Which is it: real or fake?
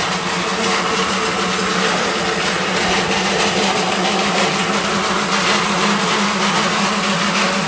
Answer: real